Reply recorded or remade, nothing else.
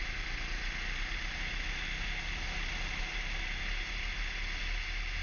recorded